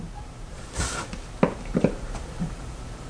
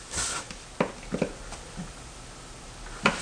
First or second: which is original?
second